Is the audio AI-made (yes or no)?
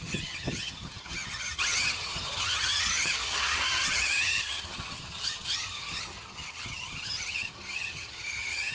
yes